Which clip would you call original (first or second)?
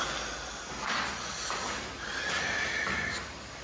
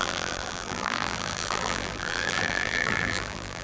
first